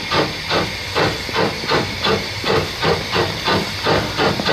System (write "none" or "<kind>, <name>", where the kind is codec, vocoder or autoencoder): none